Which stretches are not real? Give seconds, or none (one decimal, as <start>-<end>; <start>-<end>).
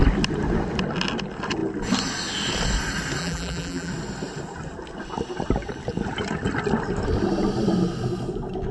3.2-3.9